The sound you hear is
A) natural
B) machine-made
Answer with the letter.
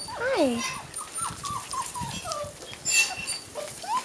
A